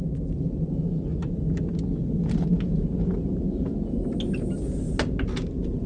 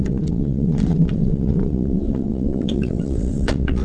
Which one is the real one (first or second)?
first